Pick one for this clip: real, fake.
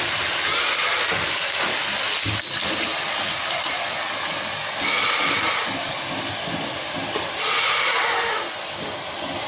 real